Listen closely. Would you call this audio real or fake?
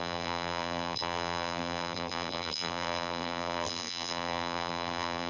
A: fake